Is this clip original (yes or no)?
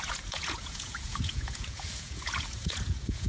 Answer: no